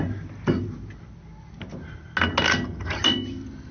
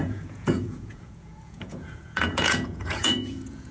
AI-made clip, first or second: second